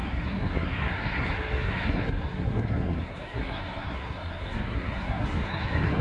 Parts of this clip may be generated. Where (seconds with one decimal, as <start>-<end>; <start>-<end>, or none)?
0.0-6.0